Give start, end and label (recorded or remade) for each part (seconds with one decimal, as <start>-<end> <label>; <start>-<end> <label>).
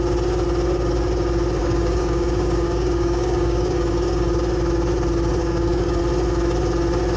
0.0-1.6 recorded; 1.6-4.4 remade; 4.4-5.4 recorded; 5.4-6.0 remade; 6.0-7.2 recorded